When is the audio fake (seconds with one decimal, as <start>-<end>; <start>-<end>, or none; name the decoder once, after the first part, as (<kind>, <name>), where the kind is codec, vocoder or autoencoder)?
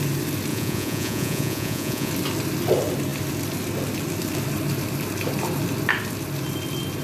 0.5-2.1 (vocoder, Vocos)